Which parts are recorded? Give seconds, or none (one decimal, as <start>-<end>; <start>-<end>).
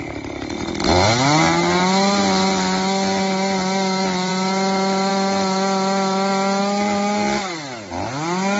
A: 0.0-8.6